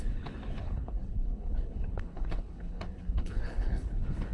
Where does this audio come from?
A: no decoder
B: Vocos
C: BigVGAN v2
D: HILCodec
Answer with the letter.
D